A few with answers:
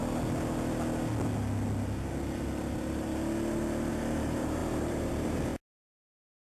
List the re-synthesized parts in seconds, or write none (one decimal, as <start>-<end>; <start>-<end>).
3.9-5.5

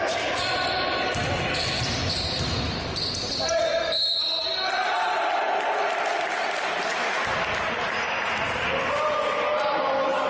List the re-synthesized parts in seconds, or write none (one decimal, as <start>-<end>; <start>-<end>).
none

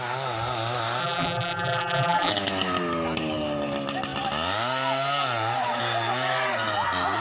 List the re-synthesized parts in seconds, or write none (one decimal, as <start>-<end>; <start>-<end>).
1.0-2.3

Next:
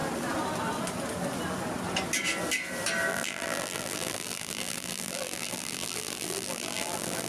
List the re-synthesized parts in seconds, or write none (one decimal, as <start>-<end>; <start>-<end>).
3.1-7.3